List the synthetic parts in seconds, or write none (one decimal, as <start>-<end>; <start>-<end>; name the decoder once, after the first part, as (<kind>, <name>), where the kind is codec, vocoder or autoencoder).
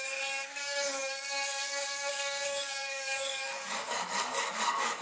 0.0-5.0 (codec, DAC)